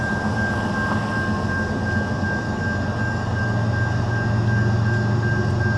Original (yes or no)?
yes